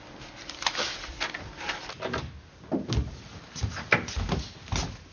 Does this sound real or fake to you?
real